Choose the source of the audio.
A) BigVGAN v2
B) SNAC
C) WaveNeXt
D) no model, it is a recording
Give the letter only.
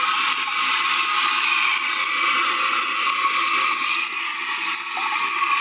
D